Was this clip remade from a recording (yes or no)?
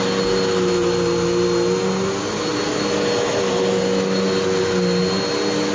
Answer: no